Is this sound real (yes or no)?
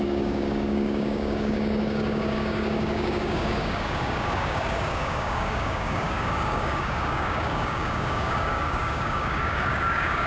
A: no